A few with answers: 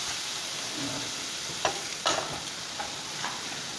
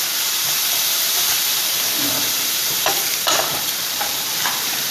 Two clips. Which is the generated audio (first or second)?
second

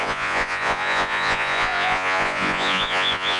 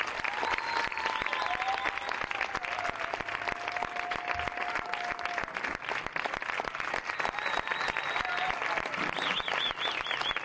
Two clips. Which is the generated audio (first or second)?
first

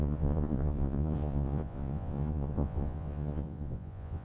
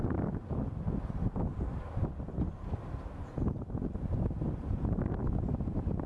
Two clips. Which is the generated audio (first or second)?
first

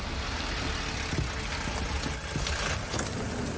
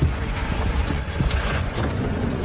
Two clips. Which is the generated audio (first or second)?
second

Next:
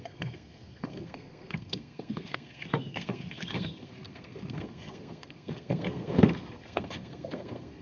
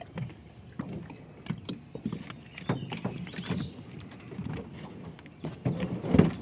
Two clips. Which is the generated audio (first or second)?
first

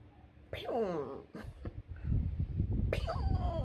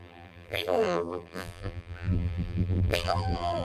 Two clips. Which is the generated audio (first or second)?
second